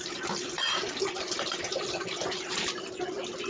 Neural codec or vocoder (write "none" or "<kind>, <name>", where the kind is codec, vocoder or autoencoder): none